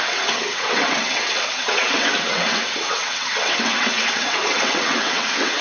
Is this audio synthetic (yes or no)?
yes